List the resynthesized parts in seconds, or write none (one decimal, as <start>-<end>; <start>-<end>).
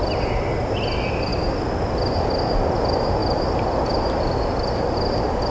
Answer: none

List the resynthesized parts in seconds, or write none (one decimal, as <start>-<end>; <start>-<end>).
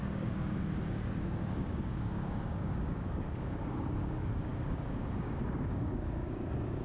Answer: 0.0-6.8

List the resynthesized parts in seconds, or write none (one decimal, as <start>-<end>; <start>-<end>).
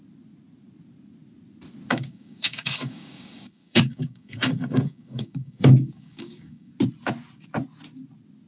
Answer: 1.9-6.7